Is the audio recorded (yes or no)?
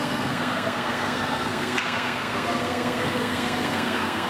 no